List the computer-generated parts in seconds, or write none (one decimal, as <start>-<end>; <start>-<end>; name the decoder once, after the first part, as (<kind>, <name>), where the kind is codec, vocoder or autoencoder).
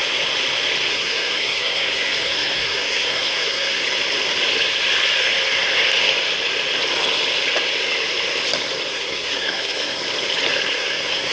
0.9-3.8 (codec, SNAC); 8.9-10.0; 10.7-11.3